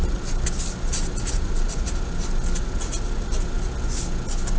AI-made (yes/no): no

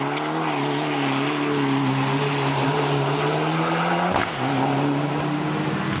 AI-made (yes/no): no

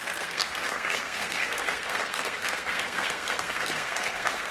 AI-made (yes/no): yes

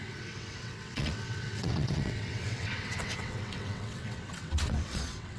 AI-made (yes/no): yes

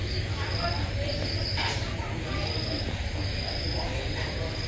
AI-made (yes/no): no